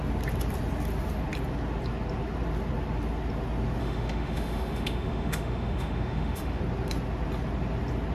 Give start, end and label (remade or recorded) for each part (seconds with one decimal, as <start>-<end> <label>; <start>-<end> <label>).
0.0-3.8 recorded; 3.8-6.6 remade; 6.6-8.1 recorded